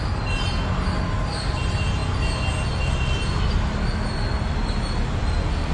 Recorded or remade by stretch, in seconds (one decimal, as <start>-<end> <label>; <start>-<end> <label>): 0.0-5.7 recorded